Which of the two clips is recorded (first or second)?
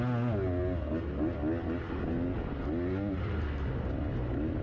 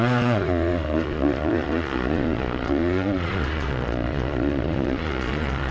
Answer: first